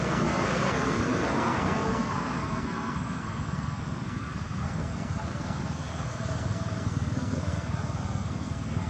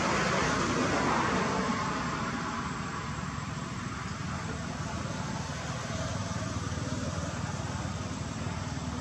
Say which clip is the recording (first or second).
second